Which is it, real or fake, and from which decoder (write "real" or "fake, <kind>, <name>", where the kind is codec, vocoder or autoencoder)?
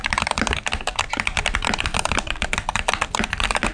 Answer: real